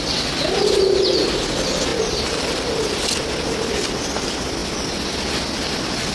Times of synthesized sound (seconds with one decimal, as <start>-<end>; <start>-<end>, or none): none